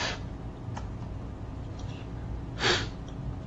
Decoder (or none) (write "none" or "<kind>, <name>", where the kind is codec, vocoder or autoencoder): none